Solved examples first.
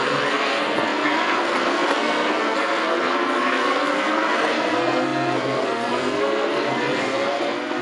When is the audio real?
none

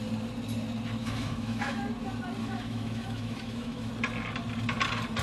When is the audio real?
0.0-1.0; 1.8-2.4; 3.9-5.2

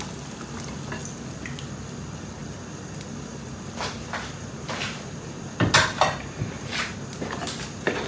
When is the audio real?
0.0-8.1

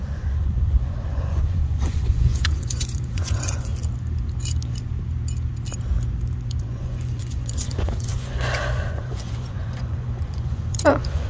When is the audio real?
3.7-6.6

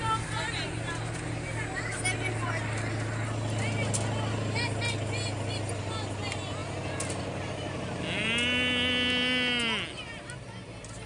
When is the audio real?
0.0-11.1

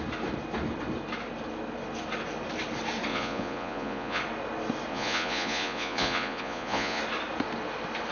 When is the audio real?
0.0-3.1; 4.2-4.9; 7.0-8.1

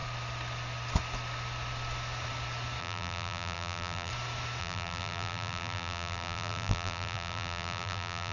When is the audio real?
0.0-2.8; 4.1-4.6